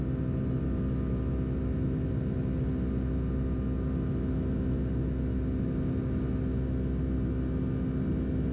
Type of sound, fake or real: real